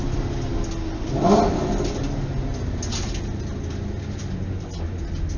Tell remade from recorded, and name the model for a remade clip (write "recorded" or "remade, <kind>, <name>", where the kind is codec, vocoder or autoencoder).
recorded